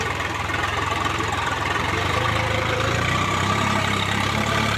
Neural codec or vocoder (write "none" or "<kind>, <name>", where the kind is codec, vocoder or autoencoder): vocoder, BigVGAN v2